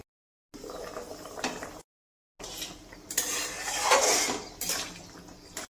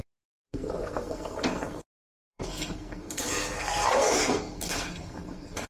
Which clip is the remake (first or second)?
second